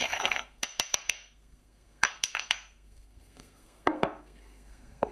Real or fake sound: fake